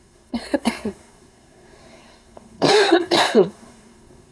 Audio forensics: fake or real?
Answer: fake